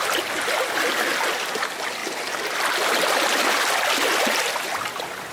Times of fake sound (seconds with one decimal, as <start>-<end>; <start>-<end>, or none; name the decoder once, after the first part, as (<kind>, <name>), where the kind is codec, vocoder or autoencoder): none